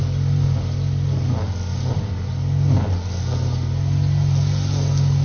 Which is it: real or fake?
real